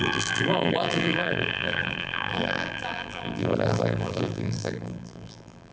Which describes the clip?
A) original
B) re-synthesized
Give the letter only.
B